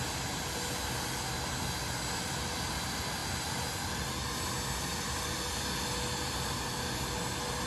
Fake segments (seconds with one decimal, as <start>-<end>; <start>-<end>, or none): 3.2-4.0